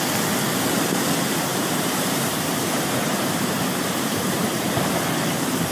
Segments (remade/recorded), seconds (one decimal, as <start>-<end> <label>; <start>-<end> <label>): 0.0-1.5 recorded; 1.5-4.9 remade; 4.9-5.7 recorded